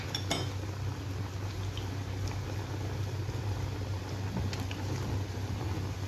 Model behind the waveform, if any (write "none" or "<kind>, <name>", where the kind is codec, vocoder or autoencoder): none